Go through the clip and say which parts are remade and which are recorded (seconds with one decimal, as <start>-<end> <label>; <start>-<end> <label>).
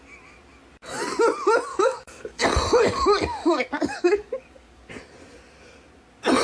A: 0.0-1.7 recorded; 1.7-2.4 remade; 2.4-3.4 recorded; 3.4-4.9 remade; 4.9-6.4 recorded